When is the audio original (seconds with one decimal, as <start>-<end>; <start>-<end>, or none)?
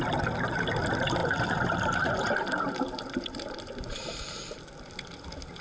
0.0-1.2; 4.6-5.6